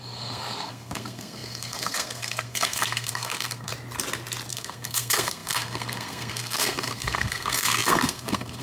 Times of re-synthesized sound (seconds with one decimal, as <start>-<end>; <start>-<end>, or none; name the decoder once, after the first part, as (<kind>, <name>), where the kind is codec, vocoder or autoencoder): 0.0-3.7 (codec, SNAC); 4.5-8.6

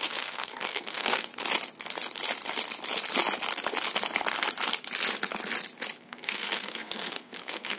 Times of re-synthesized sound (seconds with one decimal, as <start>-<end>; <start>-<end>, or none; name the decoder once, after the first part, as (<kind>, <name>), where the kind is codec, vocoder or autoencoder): 0.0-1.3 (codec, SNAC); 6.0-7.8

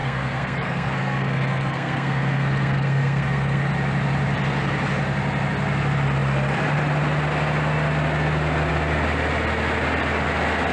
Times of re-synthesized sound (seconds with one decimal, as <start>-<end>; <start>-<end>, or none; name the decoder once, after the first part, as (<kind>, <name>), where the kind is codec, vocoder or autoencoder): 0.0-3.7 (codec, SNAC)

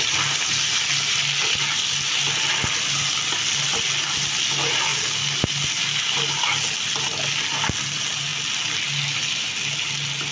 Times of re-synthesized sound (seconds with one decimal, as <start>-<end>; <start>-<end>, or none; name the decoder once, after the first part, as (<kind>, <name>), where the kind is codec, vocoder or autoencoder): none

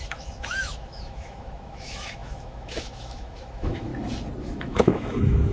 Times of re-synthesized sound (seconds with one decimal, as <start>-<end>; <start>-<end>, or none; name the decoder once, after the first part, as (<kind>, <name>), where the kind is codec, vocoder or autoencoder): 0.0-3.9 (autoencoder, DAC-VAE); 4.4-5.5